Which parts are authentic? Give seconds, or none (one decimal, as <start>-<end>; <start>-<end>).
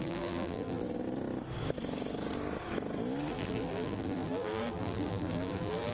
0.8-3.3